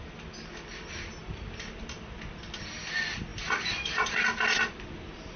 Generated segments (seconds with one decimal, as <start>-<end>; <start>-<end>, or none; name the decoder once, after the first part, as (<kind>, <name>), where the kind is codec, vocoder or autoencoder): 1.2-1.8 (vocoder, BigVGAN v2)